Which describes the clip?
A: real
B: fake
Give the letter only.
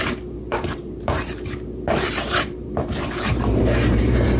B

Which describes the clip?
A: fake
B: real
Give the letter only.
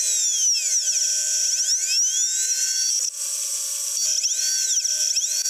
B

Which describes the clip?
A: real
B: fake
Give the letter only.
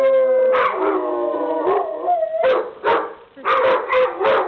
A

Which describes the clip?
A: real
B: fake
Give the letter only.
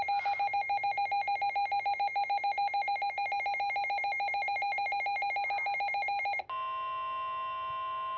A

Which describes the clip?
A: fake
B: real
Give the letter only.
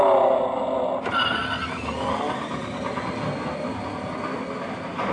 B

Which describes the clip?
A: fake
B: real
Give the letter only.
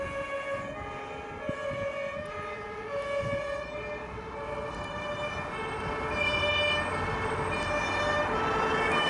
B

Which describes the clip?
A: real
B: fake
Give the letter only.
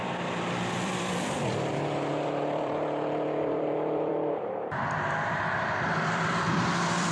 B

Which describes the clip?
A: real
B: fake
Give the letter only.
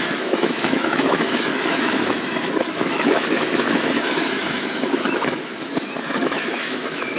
B